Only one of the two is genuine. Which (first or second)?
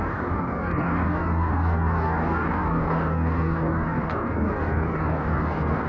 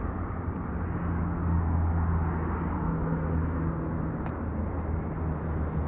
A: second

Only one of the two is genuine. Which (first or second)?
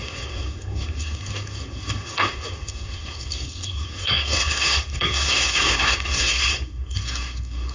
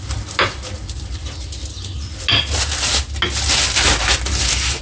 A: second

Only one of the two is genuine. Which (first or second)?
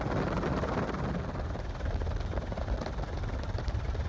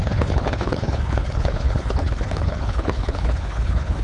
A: first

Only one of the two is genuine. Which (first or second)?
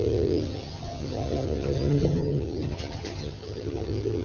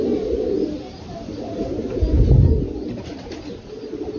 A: second